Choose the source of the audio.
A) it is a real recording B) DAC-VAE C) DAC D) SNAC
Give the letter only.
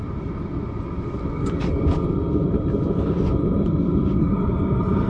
A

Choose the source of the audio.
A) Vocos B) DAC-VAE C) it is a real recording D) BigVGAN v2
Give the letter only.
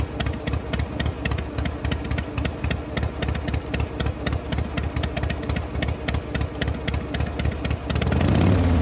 C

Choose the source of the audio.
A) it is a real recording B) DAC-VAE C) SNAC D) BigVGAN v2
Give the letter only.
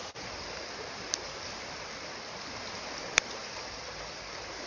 A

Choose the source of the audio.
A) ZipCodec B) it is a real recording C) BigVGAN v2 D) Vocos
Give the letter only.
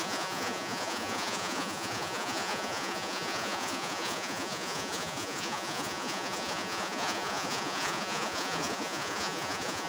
D